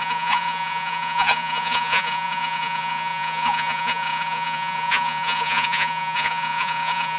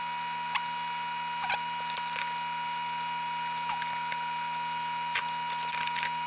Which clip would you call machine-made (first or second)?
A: first